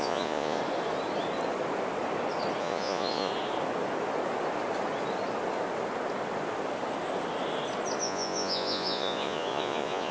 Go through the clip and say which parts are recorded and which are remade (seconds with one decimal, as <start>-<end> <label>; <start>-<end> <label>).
0.0-0.6 remade; 0.6-2.6 recorded; 2.6-3.3 remade; 3.3-8.0 recorded; 8.0-10.1 remade